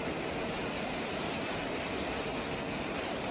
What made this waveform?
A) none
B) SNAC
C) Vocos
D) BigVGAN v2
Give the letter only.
A